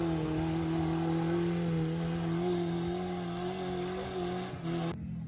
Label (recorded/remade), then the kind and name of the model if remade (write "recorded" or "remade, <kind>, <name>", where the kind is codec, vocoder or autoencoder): recorded